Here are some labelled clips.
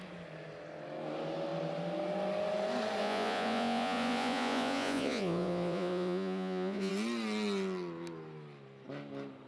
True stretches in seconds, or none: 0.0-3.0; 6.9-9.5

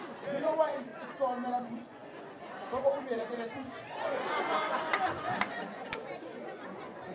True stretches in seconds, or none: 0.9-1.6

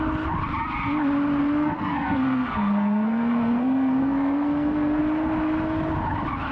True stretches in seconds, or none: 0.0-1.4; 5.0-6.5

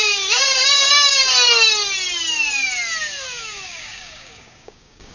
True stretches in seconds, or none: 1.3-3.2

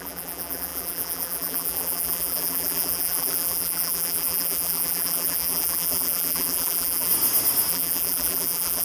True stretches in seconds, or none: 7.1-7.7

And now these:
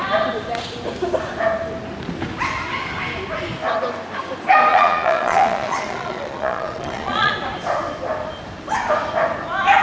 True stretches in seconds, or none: 0.0-4.7; 7.3-9.8

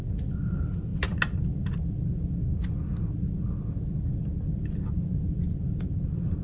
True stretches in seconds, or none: 0.0-6.4

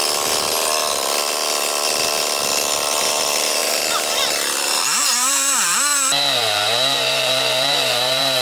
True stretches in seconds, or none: 0.0-3.0